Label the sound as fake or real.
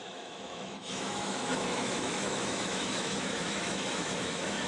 fake